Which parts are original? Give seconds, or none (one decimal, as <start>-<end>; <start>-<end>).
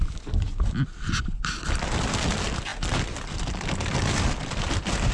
0.0-1.2; 2.3-5.1